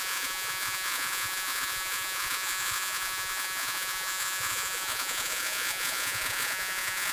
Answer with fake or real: fake